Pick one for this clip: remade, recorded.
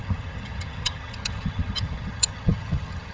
remade